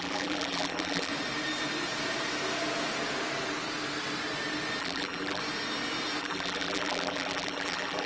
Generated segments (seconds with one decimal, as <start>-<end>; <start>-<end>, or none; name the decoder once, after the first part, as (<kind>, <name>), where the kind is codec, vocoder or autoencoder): 0.0-1.1 (vocoder, BigVGAN v2); 4.8-5.4; 6.2-8.1